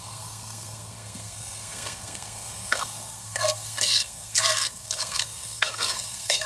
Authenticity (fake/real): fake